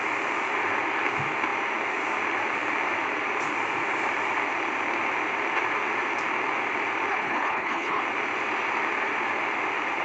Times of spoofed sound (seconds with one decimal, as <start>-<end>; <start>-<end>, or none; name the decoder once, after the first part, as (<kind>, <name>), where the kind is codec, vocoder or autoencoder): 7.1-8.0 (codec, HILCodec)